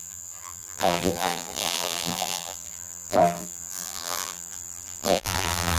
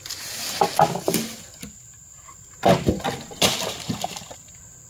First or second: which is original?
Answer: second